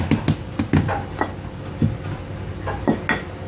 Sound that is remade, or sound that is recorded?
recorded